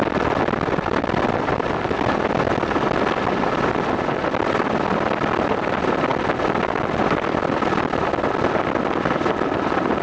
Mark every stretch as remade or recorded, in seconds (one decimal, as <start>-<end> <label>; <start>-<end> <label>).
0.0-10.0 recorded